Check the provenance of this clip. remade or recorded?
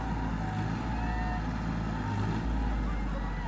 recorded